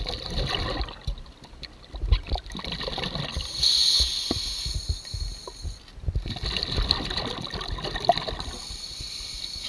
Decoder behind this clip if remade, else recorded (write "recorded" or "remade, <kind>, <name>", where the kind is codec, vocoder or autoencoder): recorded